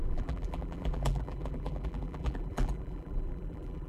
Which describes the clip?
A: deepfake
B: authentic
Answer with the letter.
A